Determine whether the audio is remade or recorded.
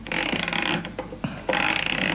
recorded